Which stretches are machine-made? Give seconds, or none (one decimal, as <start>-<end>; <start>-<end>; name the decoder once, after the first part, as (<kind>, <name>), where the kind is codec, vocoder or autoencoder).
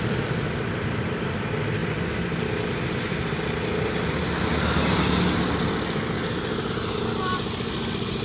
none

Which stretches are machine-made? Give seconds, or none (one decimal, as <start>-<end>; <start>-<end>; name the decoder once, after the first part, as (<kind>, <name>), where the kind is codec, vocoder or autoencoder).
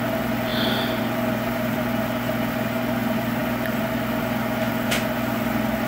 none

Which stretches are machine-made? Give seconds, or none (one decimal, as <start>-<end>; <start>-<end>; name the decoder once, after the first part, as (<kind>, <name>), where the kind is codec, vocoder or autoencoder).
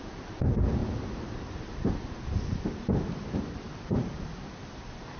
0.0-5.2 (vocoder, BigVGAN v2)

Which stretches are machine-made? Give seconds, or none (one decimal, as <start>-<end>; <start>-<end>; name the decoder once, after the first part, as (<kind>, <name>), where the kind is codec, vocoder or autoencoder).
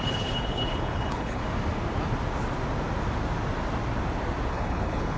0.0-1.4 (codec, HILCodec); 4.5-5.2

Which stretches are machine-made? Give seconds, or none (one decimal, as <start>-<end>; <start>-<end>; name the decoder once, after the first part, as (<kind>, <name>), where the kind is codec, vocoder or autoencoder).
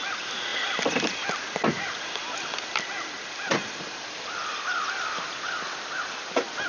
none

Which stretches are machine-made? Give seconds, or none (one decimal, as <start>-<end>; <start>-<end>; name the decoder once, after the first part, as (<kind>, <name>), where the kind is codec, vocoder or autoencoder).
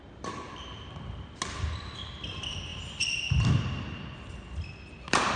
none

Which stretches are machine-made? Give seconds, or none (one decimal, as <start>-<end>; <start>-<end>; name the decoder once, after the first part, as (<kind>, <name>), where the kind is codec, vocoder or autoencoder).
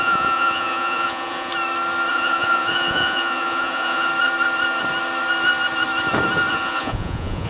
0.0-1.5 (vocoder, Vocos); 2.1-4.1; 6.5-7.5